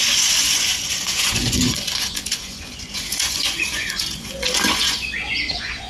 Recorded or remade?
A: remade